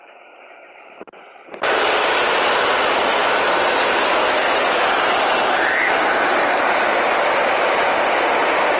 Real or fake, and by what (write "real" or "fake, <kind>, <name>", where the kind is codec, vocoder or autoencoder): fake, vocoder, BigVGAN v2